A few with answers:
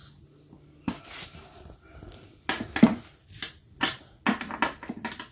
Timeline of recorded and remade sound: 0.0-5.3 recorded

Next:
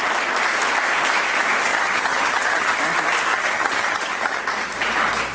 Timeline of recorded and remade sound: 0.0-1.7 recorded; 1.7-2.8 remade; 2.8-3.3 recorded; 3.3-4.4 remade; 4.4-5.3 recorded

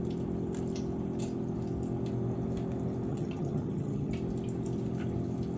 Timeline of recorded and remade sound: 0.0-3.1 recorded; 3.1-4.1 remade; 4.1-5.6 recorded